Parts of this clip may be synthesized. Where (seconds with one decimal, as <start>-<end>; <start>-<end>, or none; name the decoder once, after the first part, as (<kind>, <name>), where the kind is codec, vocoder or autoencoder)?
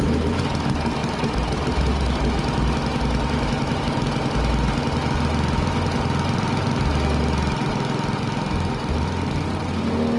1.0-3.8 (vocoder, BigVGAN v2)